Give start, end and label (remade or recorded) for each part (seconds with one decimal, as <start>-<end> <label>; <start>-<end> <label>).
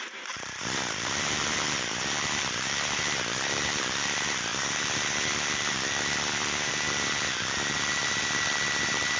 0.0-9.2 remade